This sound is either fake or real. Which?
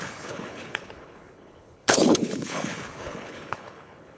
fake